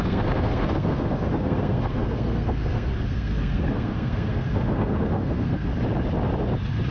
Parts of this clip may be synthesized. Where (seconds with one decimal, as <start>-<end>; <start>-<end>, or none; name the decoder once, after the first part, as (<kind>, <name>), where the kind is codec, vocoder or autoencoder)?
0.0-5.7 (codec, SNAC)